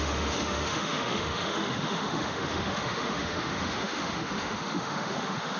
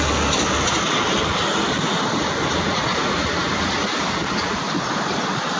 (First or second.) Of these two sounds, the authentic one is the second